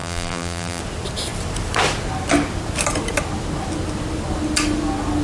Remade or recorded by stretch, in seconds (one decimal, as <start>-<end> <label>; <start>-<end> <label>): 0.0-0.8 remade; 0.8-5.2 recorded